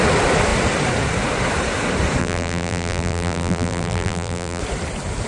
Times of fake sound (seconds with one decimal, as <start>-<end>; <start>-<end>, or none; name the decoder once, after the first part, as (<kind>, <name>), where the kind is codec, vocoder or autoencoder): 2.2-4.6 (vocoder, BigVGAN v2)